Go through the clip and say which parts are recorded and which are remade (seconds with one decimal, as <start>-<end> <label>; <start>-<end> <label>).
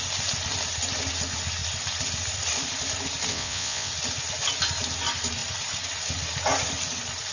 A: 0.0-3.3 recorded; 3.3-3.9 remade; 3.9-7.3 recorded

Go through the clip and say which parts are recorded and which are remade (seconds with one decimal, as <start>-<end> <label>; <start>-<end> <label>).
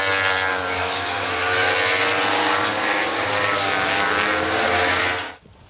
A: 0.0-0.5 recorded; 0.5-1.7 remade; 1.7-2.3 recorded; 2.3-5.0 remade; 5.0-5.7 recorded